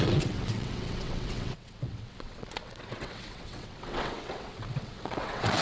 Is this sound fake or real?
fake